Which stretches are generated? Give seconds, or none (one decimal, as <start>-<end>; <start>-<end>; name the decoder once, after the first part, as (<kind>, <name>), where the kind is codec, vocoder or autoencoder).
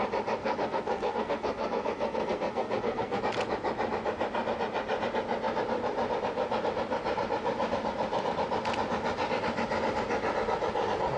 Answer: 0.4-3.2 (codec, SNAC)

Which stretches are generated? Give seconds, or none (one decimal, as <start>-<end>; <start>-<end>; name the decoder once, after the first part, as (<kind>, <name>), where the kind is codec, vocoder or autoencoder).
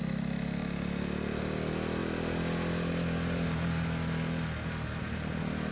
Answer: none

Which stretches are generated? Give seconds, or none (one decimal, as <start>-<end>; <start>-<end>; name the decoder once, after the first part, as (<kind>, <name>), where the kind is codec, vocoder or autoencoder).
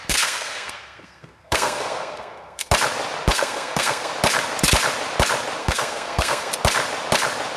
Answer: 0.0-2.7 (codec, SNAC); 3.3-4.1; 5.6-6.5